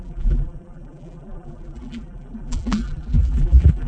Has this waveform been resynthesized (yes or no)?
yes